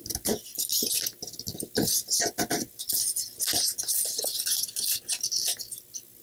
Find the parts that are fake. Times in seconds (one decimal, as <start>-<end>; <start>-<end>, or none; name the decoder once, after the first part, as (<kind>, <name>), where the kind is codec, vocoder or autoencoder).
none